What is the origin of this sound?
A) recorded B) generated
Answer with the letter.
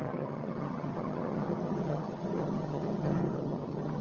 B